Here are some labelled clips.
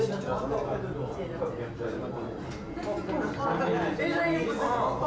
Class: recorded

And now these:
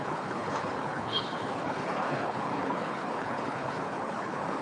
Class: remade